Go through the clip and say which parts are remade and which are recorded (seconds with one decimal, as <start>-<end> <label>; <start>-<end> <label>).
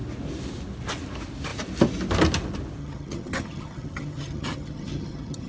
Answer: 0.0-2.8 recorded; 2.8-5.5 remade